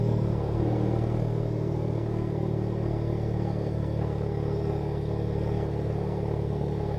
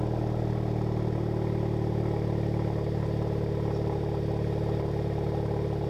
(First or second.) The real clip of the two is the second